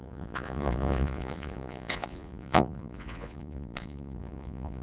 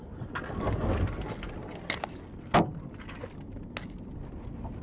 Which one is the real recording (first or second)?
second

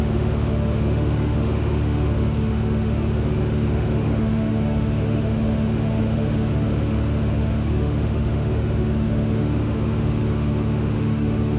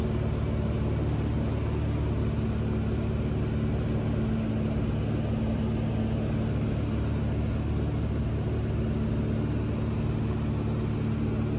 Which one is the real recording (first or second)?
second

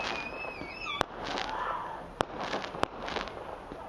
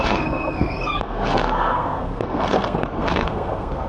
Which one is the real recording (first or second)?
first